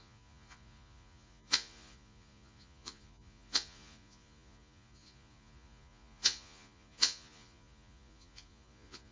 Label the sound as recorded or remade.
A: remade